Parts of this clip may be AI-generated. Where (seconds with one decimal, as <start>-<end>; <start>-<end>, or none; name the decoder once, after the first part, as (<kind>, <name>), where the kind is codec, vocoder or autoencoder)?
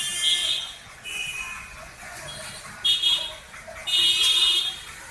0.4-2.2 (vocoder, Vocos)